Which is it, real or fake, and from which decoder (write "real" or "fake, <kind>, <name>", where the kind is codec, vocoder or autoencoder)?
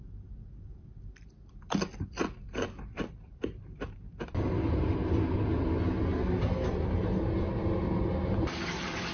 real